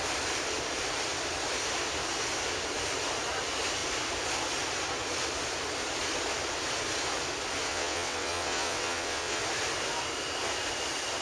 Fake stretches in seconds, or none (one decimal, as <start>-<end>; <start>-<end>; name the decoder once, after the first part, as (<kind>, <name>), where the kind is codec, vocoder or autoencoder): 7.7-9.4 (vocoder, WaveNeXt)